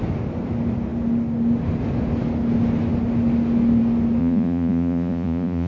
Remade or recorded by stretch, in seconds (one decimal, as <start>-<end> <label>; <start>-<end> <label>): 0.0-4.2 recorded; 4.2-5.7 remade